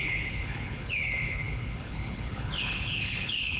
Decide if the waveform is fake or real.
fake